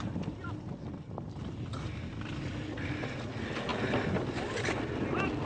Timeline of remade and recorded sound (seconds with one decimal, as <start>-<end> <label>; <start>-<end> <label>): 0.0-5.5 recorded

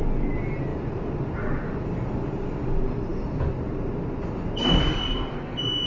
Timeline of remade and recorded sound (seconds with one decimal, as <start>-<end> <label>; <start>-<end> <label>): 0.0-5.9 recorded

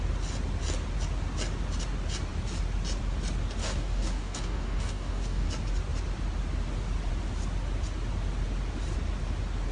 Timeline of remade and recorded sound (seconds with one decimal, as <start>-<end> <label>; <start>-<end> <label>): 0.0-3.6 recorded; 3.6-5.5 remade; 5.5-9.7 recorded

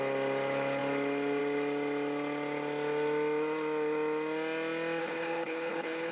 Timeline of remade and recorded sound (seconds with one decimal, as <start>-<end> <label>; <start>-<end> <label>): 0.0-5.0 recorded; 5.0-6.1 remade

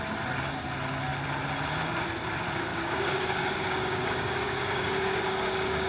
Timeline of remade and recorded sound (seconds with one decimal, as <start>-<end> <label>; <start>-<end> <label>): 0.0-2.7 recorded; 2.7-5.9 remade

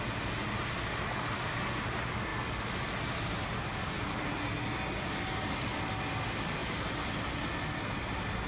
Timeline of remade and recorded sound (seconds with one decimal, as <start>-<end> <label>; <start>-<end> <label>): 0.0-8.5 recorded

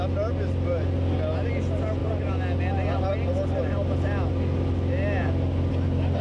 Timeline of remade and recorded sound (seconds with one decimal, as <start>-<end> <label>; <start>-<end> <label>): 0.0-6.2 recorded

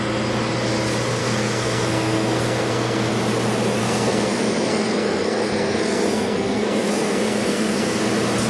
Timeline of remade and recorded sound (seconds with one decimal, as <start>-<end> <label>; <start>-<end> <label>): 0.0-1.2 recorded; 1.2-3.1 remade; 3.1-3.8 recorded; 3.8-8.0 remade; 8.0-8.5 recorded